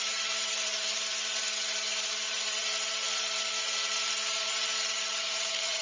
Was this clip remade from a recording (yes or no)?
yes